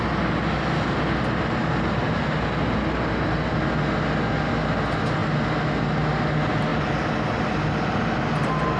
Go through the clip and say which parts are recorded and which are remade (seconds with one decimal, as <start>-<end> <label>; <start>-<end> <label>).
0.0-8.8 recorded